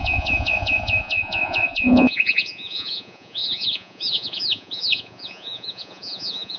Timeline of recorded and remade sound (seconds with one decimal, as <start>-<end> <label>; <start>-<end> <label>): 0.0-6.6 remade